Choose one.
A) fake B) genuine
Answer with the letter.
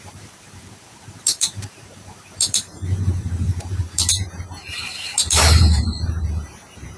A